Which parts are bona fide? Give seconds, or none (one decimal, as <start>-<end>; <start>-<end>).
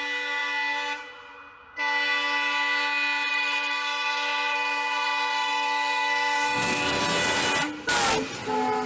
0.0-3.3; 7.0-8.9